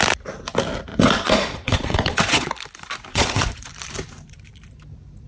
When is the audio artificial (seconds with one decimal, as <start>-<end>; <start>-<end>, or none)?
0.9-2.5; 3.1-3.7

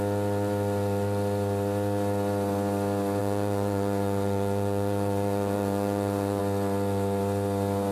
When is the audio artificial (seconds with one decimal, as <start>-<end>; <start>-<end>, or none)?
3.2-6.4